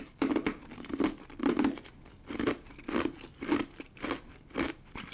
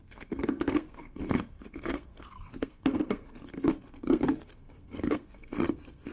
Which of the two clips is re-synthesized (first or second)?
second